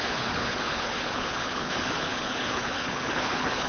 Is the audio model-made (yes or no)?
yes